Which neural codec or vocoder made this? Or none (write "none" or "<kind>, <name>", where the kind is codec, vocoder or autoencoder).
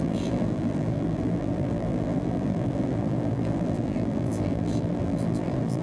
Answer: vocoder, BigVGAN v2